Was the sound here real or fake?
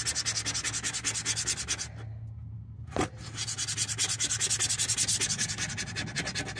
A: real